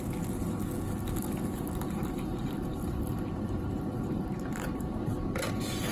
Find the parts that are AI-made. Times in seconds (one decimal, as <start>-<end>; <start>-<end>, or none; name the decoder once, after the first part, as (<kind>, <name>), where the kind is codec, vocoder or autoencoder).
1.5-5.0 (vocoder, BigVGAN v2)

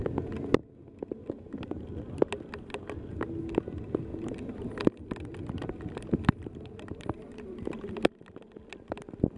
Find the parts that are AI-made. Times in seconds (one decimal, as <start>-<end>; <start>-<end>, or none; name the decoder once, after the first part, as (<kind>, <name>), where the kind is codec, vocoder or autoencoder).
4.1-8.7 (vocoder, BigVGAN v2)

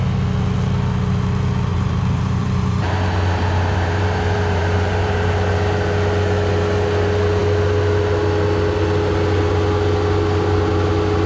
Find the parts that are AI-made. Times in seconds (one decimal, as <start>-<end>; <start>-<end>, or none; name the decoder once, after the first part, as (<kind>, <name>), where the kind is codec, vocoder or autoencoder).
1.7-5.3 (vocoder, BigVGAN v2)

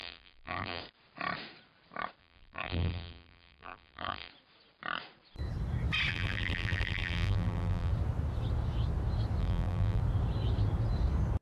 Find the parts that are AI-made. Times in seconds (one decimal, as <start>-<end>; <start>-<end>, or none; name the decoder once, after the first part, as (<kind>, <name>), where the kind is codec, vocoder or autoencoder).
0.0-0.8 (vocoder, BigVGAN v2); 2.2-4.3; 6.1-7.9; 9.4-10.0

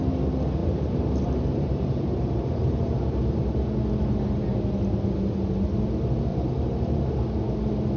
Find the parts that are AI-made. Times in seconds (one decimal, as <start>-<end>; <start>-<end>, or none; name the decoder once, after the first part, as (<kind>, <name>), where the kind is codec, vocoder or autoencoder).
0.6-3.7 (vocoder, BigVGAN v2); 6.3-7.1

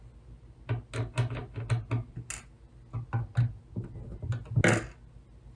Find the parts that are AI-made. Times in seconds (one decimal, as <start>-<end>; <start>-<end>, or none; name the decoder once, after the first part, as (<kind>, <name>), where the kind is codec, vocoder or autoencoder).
none

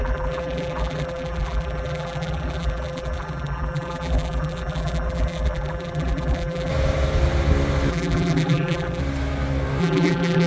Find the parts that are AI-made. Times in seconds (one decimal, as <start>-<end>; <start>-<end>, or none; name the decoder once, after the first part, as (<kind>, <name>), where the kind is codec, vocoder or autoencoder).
0.0-6.7 (vocoder, BigVGAN v2); 7.9-9.0; 9.8-10.5